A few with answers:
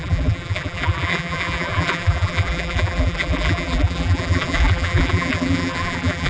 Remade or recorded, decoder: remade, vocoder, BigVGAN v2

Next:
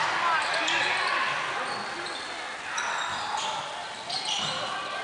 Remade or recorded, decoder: recorded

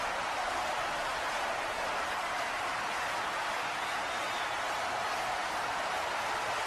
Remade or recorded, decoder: recorded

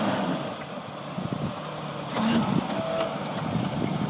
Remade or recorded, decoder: recorded